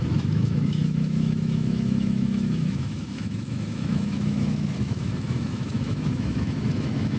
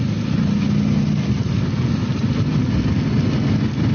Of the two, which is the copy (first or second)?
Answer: first